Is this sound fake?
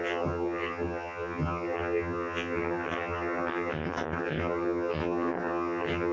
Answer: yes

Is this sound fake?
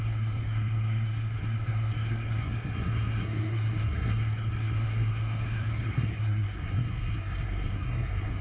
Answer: yes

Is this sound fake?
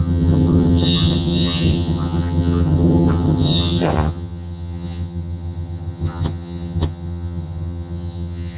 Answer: yes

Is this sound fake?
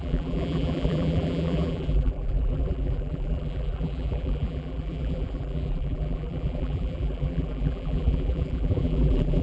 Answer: yes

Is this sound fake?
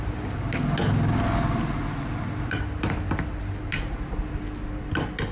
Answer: no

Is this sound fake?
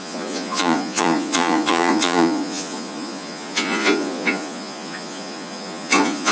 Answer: yes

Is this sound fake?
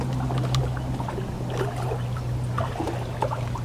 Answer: no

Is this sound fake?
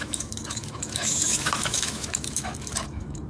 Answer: yes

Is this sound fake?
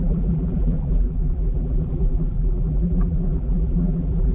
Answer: yes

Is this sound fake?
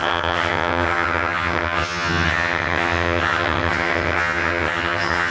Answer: yes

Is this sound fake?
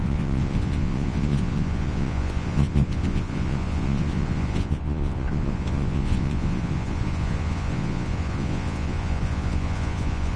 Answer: yes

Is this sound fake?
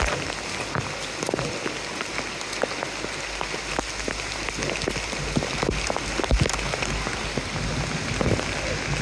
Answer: no